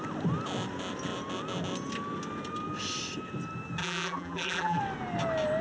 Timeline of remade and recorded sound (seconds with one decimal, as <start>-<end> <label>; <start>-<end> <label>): 0.0-3.8 recorded; 3.8-4.8 remade; 4.8-5.6 recorded